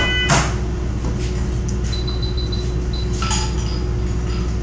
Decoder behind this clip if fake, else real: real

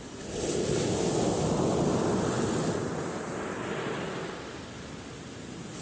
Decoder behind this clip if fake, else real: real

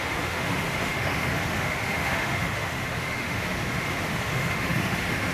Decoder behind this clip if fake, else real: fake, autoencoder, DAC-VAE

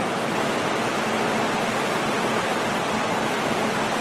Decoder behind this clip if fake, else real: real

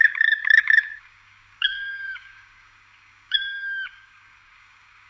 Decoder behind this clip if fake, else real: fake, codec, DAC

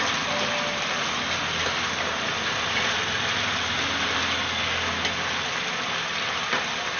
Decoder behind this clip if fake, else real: real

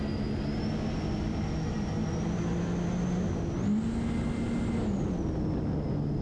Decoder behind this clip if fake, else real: real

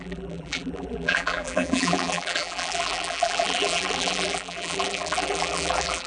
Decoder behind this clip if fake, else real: fake, vocoder, BigVGAN v2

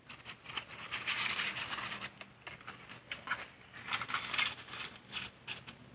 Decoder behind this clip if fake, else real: real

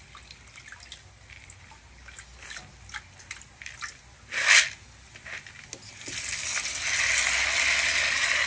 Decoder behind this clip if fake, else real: real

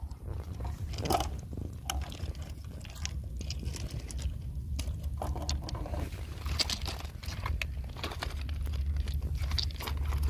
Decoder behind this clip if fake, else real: real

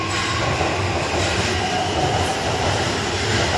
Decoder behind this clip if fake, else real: real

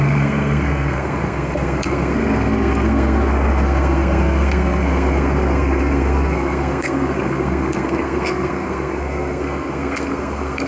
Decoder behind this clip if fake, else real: fake, codec, SNAC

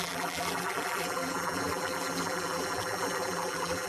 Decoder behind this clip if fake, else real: fake, vocoder, BigVGAN v2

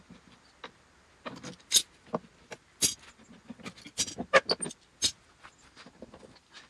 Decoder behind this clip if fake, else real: real